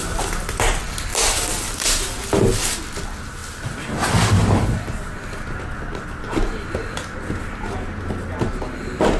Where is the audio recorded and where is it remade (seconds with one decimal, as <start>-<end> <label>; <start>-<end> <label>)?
0.0-1.1 recorded; 1.1-2.2 remade; 2.2-9.2 recorded